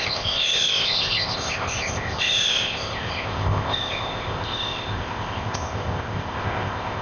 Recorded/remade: remade